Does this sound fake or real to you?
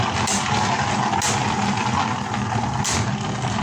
real